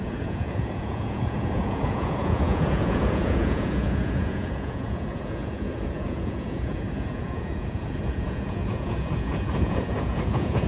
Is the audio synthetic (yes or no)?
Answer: yes